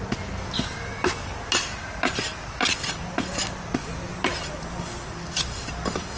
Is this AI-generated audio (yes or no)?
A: no